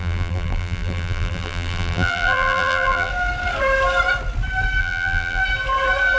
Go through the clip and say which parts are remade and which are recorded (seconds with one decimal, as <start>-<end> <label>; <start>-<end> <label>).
0.0-3.1 remade; 3.1-4.8 recorded; 4.8-5.4 remade; 5.4-6.2 recorded